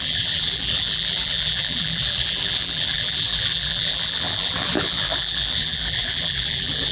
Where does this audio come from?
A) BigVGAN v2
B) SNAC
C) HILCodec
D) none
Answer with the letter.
A